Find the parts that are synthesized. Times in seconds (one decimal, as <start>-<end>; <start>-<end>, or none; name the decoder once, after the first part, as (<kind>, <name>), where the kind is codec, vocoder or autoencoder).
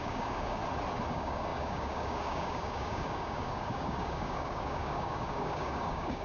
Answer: 0.0-0.6 (codec, DAC); 1.1-6.2